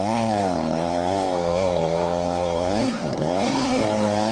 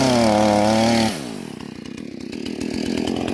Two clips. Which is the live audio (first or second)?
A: second